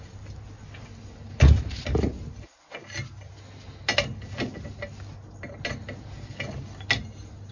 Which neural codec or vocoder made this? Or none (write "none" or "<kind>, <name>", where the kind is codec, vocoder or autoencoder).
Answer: none